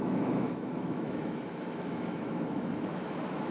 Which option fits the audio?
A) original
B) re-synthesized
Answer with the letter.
B